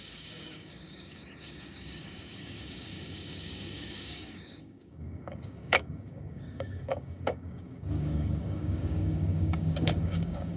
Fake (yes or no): yes